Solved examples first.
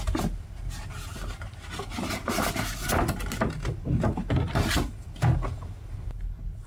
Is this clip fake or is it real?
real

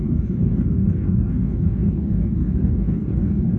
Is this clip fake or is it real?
fake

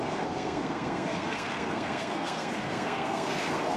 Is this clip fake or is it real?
fake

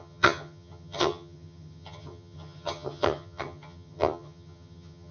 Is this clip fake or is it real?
fake